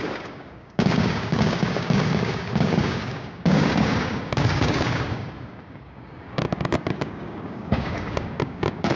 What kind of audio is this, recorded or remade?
remade